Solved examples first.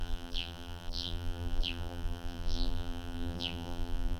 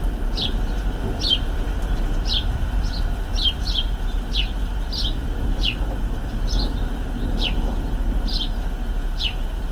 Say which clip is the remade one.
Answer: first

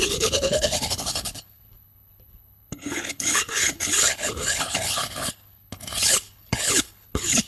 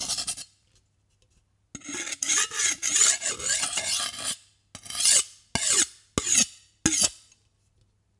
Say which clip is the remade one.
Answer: first